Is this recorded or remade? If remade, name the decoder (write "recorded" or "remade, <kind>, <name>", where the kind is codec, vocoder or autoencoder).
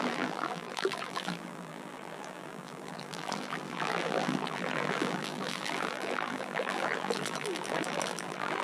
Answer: remade, vocoder, BigVGAN v2